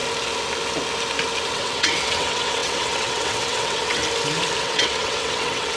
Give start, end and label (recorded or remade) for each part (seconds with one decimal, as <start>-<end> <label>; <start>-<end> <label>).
0.0-1.5 recorded; 1.5-4.0 remade; 4.0-4.6 recorded; 4.6-5.8 remade